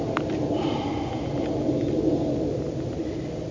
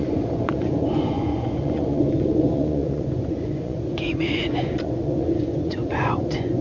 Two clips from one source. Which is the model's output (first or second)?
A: second